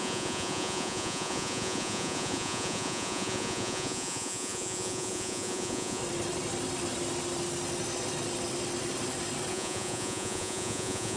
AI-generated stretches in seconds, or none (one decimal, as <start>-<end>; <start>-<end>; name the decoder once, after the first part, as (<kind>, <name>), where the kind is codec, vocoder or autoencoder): 0.0-6.0 (vocoder, Vocos); 9.5-11.2